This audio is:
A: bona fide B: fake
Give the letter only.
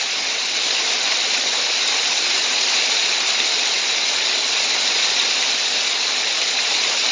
A